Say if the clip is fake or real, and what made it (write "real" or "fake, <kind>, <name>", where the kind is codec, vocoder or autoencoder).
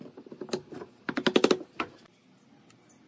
real